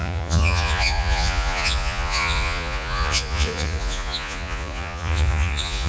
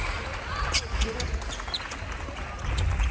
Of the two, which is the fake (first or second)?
first